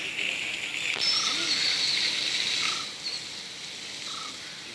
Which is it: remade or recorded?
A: recorded